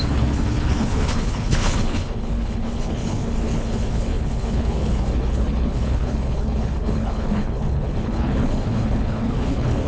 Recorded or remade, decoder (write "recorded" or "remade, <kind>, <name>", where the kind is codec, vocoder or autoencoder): remade, codec, HILCodec